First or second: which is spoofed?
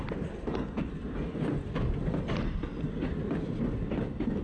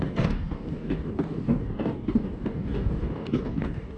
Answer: second